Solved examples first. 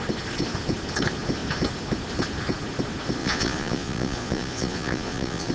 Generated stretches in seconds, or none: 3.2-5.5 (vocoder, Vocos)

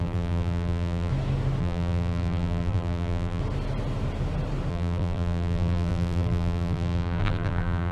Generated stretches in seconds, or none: 0.0-1.1 (vocoder, BigVGAN v2); 1.6-3.4; 4.7-7.9

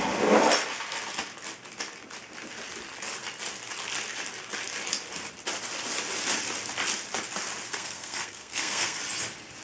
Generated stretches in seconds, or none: 7.7-9.0 (codec, SNAC)